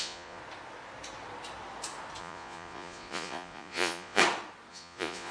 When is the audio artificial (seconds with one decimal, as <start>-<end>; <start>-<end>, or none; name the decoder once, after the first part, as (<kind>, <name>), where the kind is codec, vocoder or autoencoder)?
0.0-0.4 (vocoder, Vocos); 2.2-4.2; 4.7-5.3